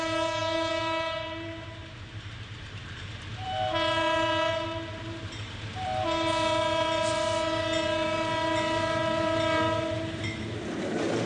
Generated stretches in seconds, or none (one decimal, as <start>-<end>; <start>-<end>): 0.0-11.3